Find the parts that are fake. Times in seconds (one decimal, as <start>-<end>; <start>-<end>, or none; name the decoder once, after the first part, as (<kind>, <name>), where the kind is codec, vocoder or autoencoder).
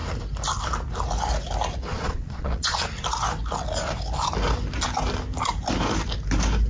1.9-2.8 (vocoder, Vocos)